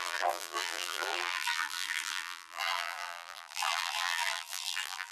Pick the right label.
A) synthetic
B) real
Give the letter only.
A